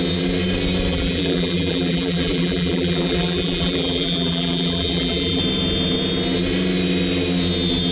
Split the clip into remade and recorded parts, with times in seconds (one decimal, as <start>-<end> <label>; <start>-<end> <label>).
0.0-0.9 recorded; 0.9-5.4 remade; 5.4-7.9 recorded